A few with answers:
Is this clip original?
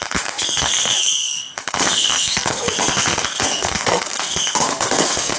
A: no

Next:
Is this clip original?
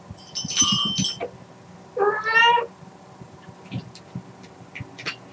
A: yes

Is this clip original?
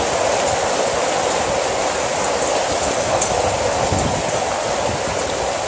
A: yes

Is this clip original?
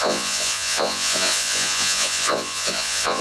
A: no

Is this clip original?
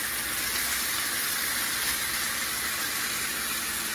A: no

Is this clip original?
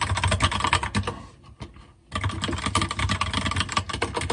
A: yes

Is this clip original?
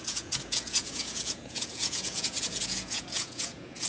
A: no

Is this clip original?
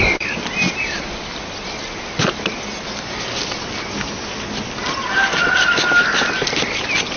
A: yes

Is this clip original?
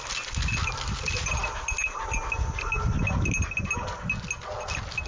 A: yes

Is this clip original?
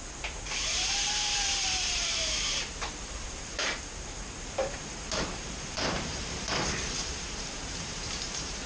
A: no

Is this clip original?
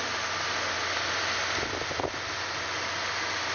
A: yes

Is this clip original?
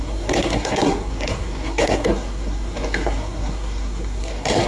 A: no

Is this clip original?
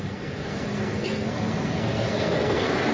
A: no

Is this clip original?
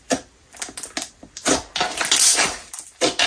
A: yes